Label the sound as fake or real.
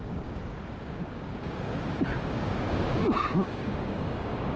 fake